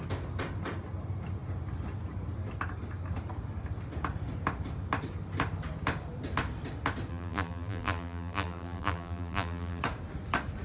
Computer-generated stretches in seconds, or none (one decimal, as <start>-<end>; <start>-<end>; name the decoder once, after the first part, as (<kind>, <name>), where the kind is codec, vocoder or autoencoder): 7.1-9.8 (vocoder, BigVGAN v2)